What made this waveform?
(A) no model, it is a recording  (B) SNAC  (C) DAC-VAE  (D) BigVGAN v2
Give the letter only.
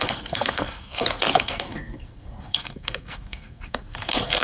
B